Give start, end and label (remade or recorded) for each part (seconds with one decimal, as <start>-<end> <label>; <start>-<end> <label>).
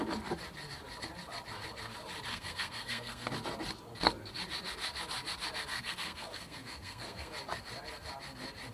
0.0-2.3 recorded; 2.3-3.3 remade; 3.3-5.7 recorded; 5.7-7.3 remade; 7.3-8.7 recorded